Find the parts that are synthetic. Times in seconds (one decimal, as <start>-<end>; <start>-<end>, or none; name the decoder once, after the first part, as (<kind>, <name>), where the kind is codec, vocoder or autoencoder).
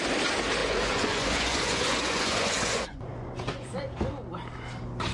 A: 0.6-3.7 (vocoder, Vocos)